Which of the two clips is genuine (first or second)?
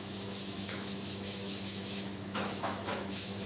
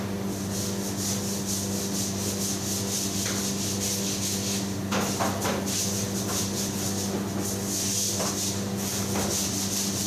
second